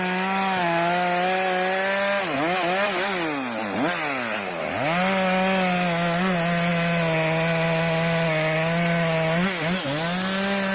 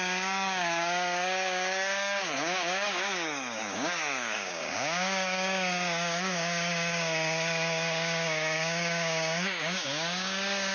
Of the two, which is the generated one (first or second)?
second